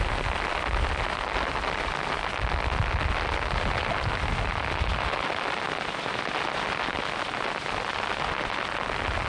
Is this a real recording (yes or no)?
yes